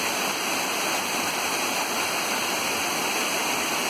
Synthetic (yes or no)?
no